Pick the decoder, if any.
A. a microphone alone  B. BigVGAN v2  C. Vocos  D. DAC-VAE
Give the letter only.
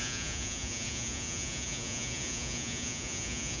C